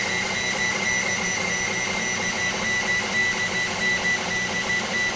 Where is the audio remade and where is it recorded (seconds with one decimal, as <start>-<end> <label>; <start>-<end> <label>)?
0.0-5.2 recorded